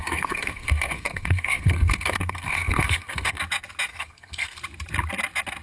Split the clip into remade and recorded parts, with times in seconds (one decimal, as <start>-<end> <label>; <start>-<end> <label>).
0.0-3.4 remade; 3.4-3.9 recorded; 3.9-4.6 remade; 4.6-5.6 recorded